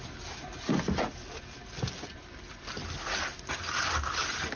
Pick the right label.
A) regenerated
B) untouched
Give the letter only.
B